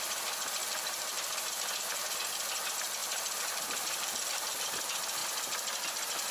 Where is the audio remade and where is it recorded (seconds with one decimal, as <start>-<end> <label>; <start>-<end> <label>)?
0.0-0.6 recorded; 0.6-1.7 remade; 1.7-3.0 recorded; 3.0-4.8 remade; 4.8-6.3 recorded